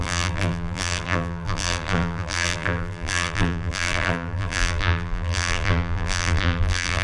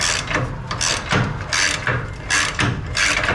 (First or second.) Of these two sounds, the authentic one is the second